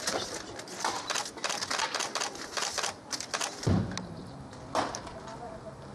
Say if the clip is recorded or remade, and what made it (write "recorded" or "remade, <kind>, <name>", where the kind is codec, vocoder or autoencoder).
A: recorded